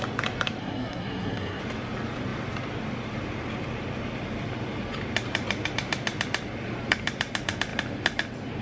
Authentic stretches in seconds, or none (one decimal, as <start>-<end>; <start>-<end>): 0.0-0.6; 1.6-8.6